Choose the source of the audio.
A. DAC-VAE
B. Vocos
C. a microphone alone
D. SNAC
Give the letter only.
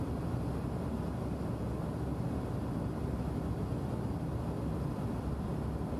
C